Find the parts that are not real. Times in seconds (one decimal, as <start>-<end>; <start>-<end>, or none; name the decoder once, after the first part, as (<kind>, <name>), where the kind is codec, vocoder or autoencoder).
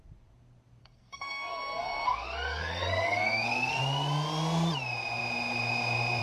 0.8-3.8 (codec, SNAC)